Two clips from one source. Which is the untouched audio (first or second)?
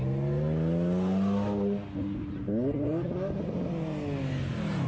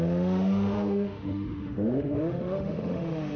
first